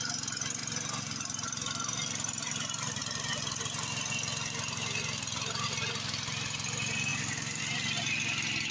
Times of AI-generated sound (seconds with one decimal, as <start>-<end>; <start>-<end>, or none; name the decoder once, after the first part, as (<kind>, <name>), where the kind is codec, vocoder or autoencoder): none

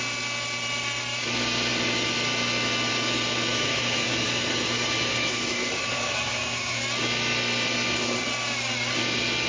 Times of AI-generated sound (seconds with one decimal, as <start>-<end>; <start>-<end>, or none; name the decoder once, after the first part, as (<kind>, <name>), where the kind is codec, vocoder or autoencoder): 3.5-6.8 (autoencoder, DAC-VAE)

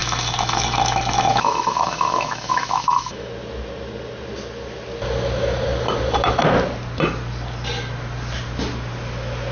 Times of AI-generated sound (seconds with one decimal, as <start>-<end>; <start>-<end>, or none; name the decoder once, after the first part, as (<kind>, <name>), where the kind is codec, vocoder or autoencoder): 0.0-3.3 (autoencoder, DAC-VAE)

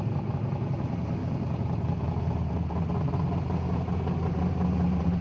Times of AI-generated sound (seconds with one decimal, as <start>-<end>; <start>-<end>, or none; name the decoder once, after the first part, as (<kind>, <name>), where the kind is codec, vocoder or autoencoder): none

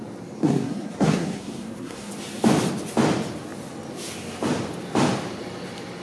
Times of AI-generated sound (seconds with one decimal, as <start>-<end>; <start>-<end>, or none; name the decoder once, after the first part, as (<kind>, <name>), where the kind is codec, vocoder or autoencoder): 0.4-2.1 (codec, SNAC)

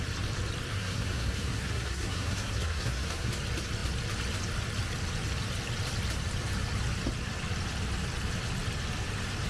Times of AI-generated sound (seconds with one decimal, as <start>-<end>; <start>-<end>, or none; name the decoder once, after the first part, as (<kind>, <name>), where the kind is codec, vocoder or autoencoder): 0.7-3.3 (codec, SNAC)